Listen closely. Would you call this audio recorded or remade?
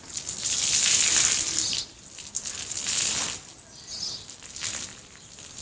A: recorded